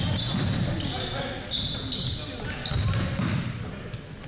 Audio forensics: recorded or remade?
recorded